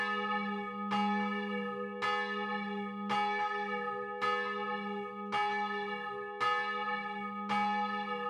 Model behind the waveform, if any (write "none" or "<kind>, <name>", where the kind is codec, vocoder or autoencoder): none